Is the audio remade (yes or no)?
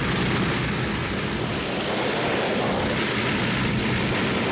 no